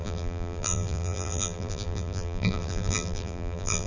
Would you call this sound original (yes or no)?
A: no